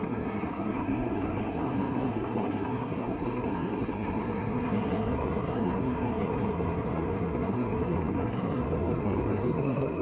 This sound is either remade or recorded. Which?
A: remade